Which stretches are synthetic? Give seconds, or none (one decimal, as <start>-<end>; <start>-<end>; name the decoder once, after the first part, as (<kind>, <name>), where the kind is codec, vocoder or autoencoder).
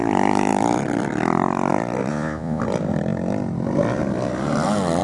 2.1-2.6 (vocoder, Vocos)